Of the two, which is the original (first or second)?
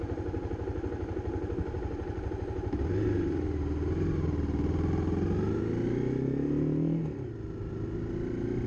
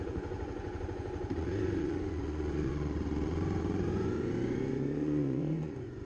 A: first